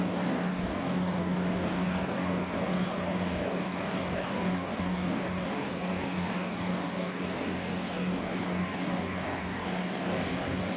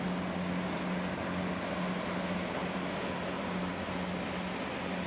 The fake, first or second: first